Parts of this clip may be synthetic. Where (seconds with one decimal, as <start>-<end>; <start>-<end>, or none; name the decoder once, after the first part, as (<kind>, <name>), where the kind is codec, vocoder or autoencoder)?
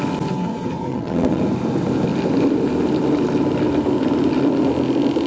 0.9-1.4 (vocoder, WaveNeXt)